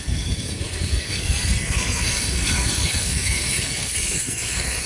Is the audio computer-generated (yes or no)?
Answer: yes